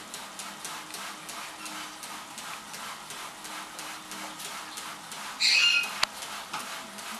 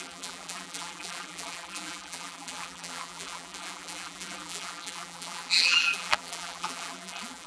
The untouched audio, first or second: first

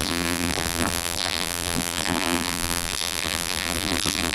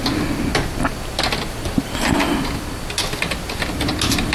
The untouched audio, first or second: second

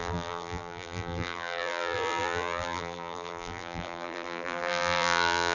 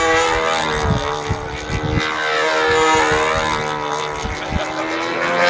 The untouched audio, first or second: second